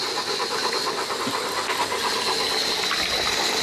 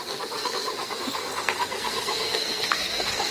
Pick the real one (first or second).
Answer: first